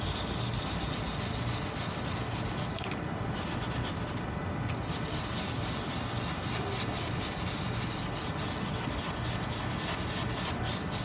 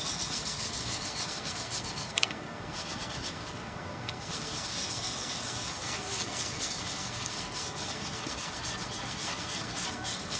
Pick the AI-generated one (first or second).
second